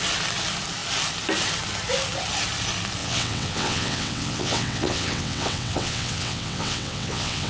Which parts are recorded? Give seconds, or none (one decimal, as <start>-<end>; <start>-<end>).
0.0-3.0